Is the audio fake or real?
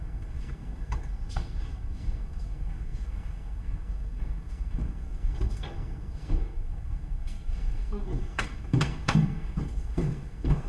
fake